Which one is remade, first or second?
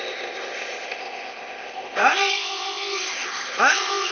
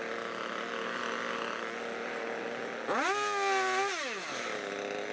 first